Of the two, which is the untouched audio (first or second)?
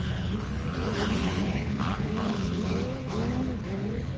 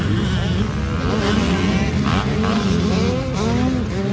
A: second